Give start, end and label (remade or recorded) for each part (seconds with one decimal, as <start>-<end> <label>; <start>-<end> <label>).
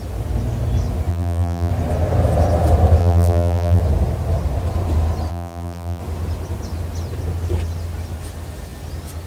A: 0.0-1.1 recorded; 1.1-1.7 remade; 1.7-3.0 recorded; 3.0-3.8 remade; 3.8-5.3 recorded; 5.3-6.0 remade; 6.0-9.3 recorded